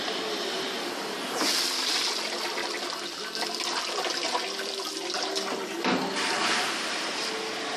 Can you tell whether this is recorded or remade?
recorded